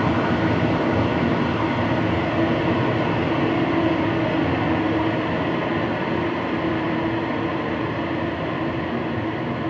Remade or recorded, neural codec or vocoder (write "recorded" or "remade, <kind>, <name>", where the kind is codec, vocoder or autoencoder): recorded